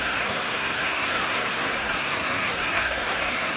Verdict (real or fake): fake